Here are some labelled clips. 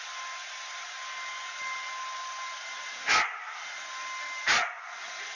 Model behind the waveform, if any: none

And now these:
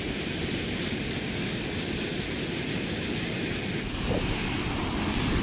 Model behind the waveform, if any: none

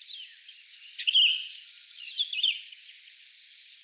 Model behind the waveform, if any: none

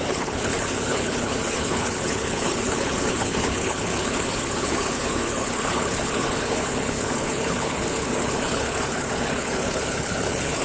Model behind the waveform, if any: codec, HILCodec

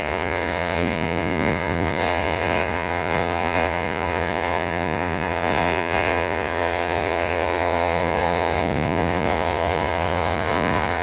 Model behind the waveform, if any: vocoder, Vocos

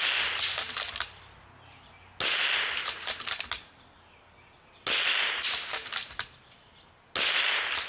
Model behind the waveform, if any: none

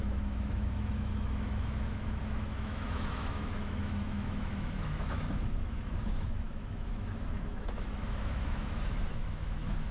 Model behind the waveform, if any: autoencoder, DAC-VAE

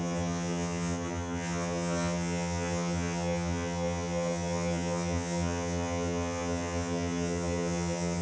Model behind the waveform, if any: vocoder, HiFi-GAN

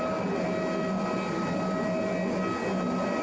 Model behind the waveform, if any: none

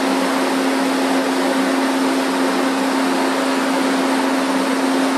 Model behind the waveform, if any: none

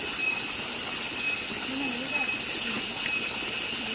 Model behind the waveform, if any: none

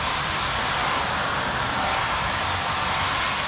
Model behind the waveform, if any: vocoder, BigVGAN v2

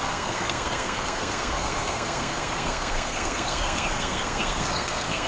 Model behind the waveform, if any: codec, SNAC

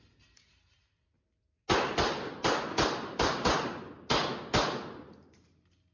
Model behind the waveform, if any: none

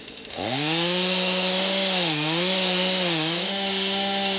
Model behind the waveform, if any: autoencoder, DAC-VAE